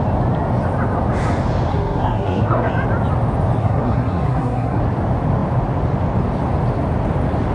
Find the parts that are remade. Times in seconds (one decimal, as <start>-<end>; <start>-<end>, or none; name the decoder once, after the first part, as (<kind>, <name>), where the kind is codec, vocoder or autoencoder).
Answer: 1.7-2.7 (codec, SNAC); 3.6-4.8

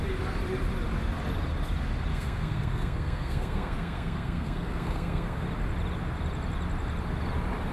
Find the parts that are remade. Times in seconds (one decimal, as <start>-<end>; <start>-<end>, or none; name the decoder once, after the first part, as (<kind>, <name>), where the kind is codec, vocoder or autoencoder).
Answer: 2.1-5.4 (codec, SNAC)